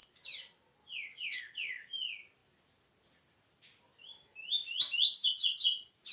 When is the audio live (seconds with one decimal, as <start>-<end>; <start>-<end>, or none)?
0.0-1.3; 1.9-6.1